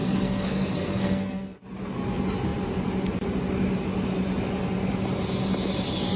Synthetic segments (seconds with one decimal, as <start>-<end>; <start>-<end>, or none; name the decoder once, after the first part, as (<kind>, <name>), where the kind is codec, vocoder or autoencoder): 0.0-1.6 (codec, SNAC)